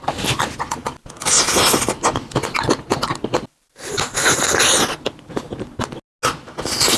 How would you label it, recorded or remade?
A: recorded